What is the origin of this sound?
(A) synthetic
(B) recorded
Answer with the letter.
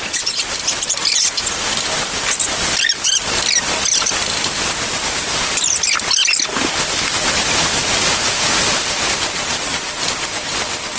B